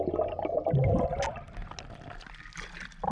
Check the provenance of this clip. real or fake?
real